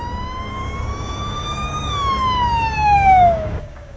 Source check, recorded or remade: remade